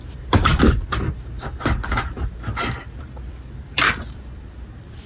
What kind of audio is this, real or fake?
fake